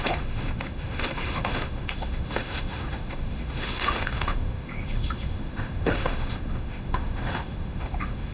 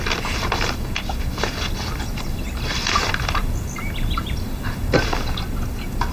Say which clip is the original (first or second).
second